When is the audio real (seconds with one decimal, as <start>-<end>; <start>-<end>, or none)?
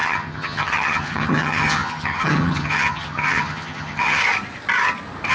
4.2-5.3